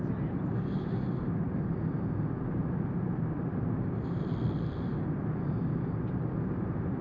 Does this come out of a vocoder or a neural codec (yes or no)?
no